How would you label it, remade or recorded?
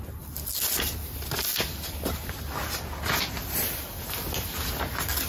recorded